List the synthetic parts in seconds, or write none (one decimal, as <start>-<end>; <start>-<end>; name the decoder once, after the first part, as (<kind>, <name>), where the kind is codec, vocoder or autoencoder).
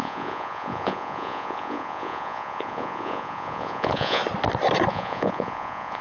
0.0-4.2 (vocoder, Vocos); 4.9-6.0